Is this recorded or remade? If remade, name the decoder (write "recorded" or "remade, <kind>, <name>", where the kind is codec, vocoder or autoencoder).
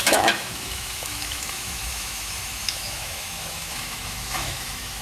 remade, autoencoder, DAC-VAE